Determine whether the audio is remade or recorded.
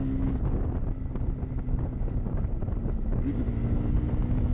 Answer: recorded